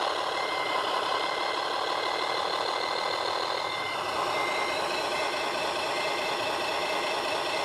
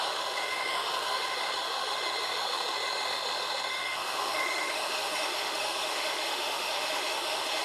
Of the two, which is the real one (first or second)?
first